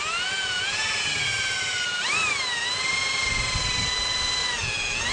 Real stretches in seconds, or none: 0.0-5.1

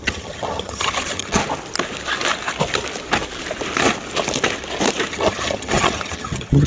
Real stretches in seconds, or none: 1.4-5.1

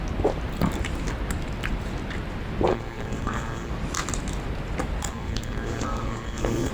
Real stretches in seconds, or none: 0.0-2.7; 3.7-5.1